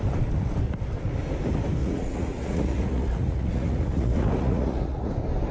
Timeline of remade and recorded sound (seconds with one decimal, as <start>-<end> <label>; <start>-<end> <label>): 0.0-1.8 recorded; 1.8-5.1 remade; 5.1-5.5 recorded